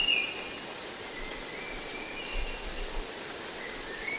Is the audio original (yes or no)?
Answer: yes